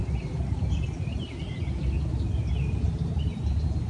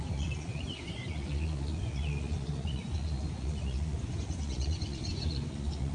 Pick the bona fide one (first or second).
first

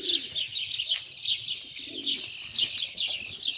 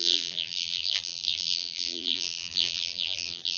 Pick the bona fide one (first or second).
first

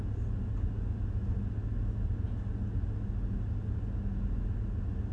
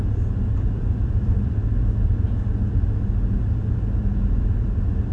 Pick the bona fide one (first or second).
first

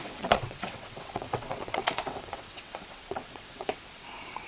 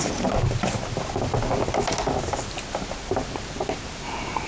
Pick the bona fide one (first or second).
second